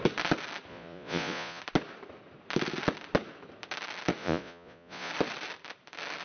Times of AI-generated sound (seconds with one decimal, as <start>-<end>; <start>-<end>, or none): 0.7-1.6; 4.2-5.1